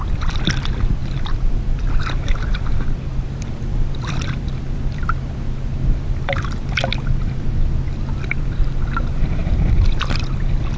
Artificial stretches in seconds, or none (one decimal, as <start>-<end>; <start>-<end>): 0.0-6.9; 8.0-10.8

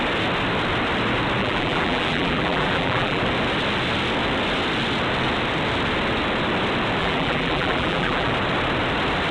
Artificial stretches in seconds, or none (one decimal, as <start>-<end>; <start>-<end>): 1.4-3.2; 7.0-8.3